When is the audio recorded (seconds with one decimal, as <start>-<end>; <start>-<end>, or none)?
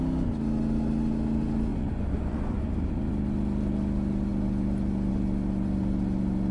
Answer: 0.0-1.7; 2.7-6.5